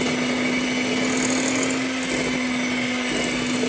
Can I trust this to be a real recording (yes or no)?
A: yes